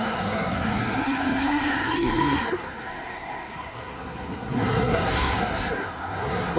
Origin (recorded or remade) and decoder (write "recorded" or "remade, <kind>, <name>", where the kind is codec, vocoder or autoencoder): remade, codec, SNAC